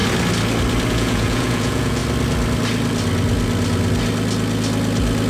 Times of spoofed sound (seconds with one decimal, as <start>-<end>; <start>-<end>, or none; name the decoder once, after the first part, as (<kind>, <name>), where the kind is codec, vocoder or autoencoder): 0.9-2.0 (vocoder, Vocos)